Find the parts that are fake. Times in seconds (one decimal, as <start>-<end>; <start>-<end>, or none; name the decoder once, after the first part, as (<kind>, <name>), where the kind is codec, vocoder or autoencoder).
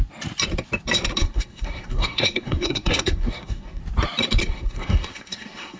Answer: 1.2-3.8 (codec, SNAC); 4.4-5.8